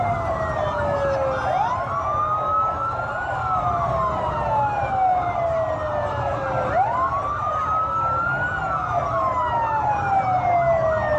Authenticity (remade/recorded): recorded